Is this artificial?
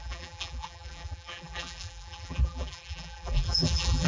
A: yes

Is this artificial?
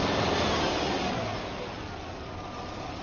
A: no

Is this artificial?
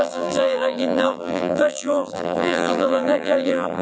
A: yes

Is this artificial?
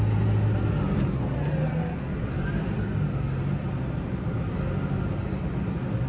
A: no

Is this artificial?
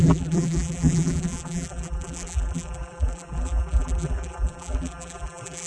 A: yes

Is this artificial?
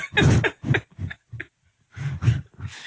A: no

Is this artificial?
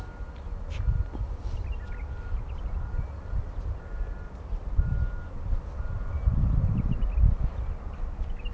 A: no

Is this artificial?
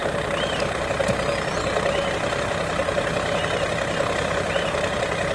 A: yes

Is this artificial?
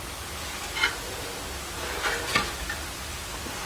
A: no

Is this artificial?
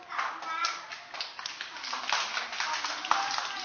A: no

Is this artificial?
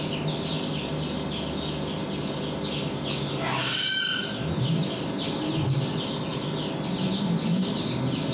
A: no